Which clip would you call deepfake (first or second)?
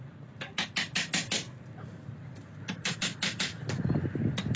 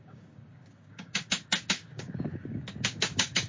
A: second